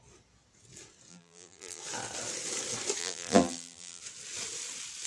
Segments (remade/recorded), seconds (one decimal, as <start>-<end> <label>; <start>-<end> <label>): 0.0-1.1 recorded; 1.1-1.8 remade; 1.8-3.0 recorded; 3.0-4.0 remade; 4.0-5.1 recorded